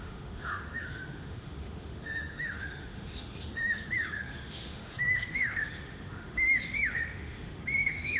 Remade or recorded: remade